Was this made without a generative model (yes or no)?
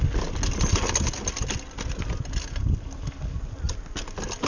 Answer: yes